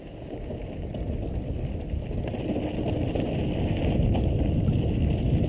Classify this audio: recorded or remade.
recorded